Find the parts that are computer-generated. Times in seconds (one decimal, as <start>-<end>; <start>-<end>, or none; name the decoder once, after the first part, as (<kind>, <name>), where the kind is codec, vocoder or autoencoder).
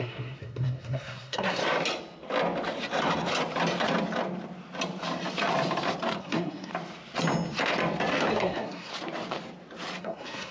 0.0-1.6 (codec, SNAC); 6.2-6.7; 8.3-8.9; 10.0-10.5